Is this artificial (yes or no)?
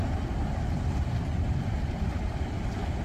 no